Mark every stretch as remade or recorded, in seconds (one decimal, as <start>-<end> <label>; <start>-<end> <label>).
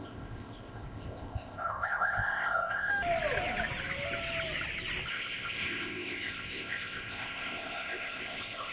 0.0-2.9 remade; 2.9-5.1 recorded; 5.1-8.7 remade